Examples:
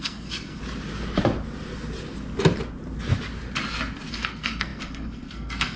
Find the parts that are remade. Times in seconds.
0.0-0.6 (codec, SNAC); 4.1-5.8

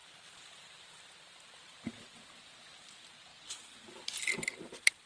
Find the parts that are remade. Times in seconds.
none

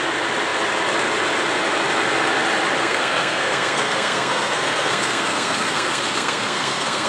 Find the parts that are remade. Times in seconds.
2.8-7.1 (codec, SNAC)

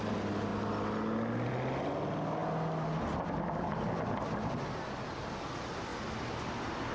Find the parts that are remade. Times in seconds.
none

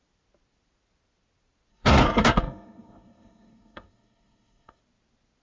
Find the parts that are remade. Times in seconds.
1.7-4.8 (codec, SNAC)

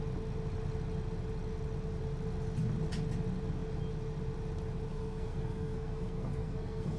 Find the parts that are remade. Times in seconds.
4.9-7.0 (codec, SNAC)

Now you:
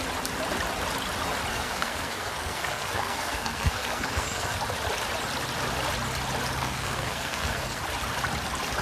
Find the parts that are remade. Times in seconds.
1.5-4.6 (codec, SNAC); 6.6-7.8